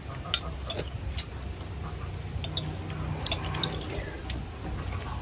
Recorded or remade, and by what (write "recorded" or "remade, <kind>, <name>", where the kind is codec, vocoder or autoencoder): recorded